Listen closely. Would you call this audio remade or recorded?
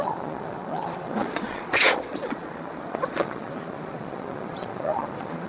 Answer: remade